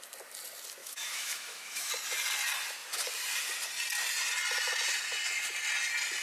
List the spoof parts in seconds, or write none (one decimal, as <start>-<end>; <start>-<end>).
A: 0.8-1.9